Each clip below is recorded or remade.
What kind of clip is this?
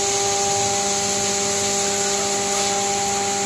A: recorded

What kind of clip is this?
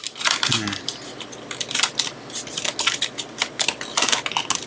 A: recorded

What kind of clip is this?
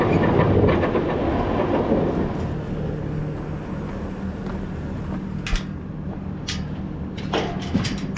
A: recorded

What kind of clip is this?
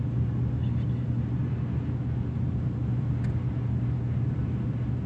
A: recorded